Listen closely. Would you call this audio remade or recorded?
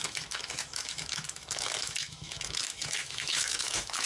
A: remade